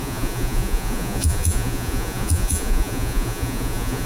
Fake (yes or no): yes